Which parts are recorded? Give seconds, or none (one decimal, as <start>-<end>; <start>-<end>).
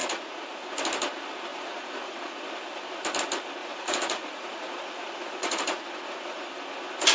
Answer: 0.7-1.5; 2.4-3.6; 6.5-7.1